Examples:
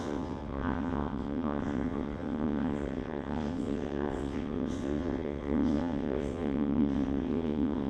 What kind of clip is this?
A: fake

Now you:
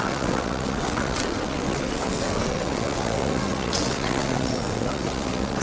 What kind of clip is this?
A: fake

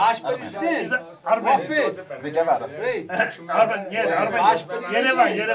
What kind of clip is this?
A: real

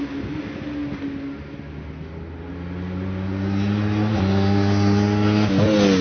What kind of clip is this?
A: real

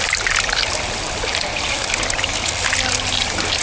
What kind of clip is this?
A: real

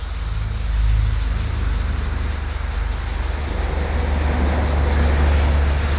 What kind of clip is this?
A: real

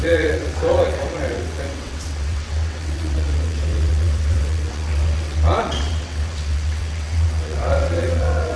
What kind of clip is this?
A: fake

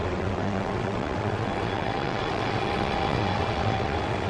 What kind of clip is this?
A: fake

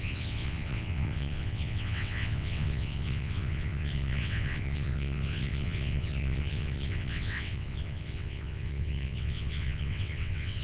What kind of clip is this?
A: fake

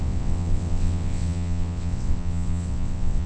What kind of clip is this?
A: fake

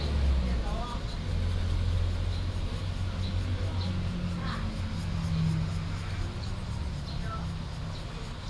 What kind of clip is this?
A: real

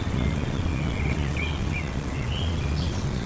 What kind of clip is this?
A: fake